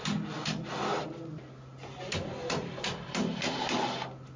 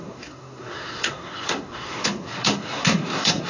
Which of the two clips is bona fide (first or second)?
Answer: first